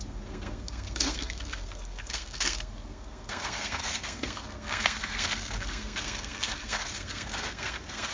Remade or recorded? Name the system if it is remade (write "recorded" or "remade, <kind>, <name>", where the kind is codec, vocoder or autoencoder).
remade, codec, SNAC